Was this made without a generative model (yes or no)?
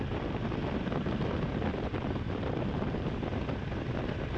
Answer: no